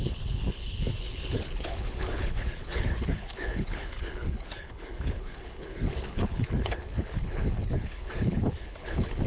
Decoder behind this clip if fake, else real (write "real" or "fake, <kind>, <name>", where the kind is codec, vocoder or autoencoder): fake, codec, HILCodec